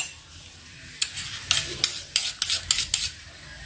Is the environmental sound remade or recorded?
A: recorded